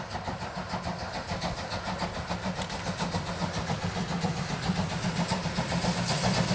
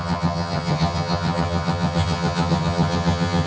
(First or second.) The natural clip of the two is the first